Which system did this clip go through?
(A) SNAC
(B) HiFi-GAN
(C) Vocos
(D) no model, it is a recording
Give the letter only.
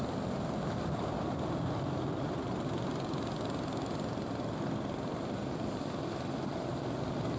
D